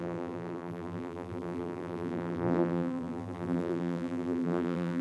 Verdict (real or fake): fake